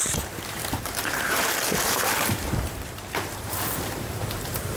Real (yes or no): no